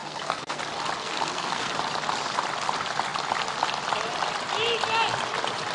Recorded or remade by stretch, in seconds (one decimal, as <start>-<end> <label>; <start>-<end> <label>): 0.0-0.6 remade; 0.6-1.0 recorded; 1.0-1.7 remade; 1.7-5.7 recorded